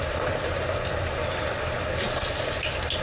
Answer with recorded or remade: recorded